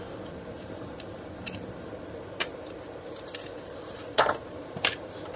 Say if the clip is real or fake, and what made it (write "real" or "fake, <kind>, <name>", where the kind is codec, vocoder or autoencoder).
fake, vocoder, BigVGAN v2